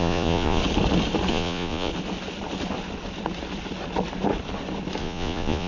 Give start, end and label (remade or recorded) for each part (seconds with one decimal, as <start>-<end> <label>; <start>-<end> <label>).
0.0-0.6 remade; 0.6-1.3 recorded; 1.3-1.9 remade; 1.9-5.0 recorded; 5.0-5.7 remade